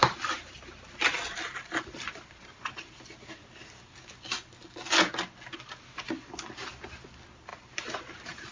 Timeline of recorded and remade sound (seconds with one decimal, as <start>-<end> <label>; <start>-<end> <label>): 0.0-4.0 remade; 4.0-7.5 recorded; 7.5-8.5 remade